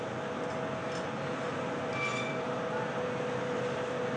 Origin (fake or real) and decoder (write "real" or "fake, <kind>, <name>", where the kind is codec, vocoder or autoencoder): real